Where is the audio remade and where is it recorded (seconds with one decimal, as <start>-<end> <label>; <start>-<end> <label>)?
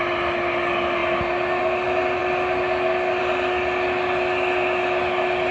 0.0-5.5 recorded